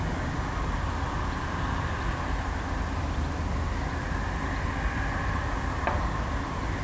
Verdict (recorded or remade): recorded